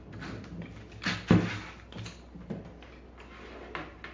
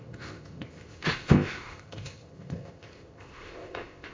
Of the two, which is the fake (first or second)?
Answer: second